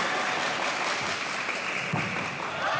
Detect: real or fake real